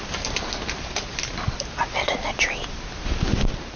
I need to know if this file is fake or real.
real